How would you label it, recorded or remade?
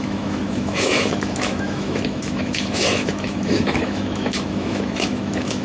remade